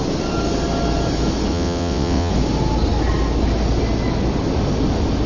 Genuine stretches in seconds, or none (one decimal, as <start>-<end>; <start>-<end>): 0.0-1.5; 2.3-5.3